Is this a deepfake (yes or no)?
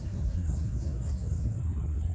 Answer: yes